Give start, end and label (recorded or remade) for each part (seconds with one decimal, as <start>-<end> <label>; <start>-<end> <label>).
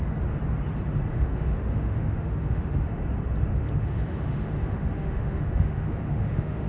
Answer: 0.0-1.1 recorded; 1.1-3.0 remade; 3.0-3.5 recorded; 3.5-6.7 remade